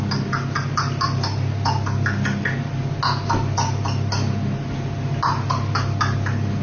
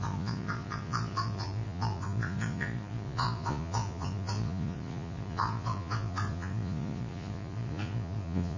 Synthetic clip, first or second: second